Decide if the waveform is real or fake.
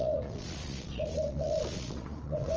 fake